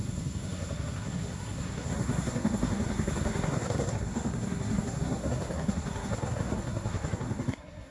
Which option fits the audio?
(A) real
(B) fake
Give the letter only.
B